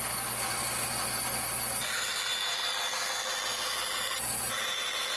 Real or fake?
real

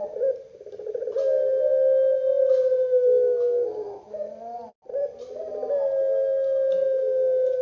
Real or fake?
real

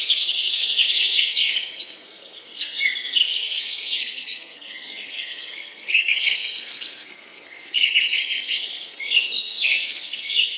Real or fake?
fake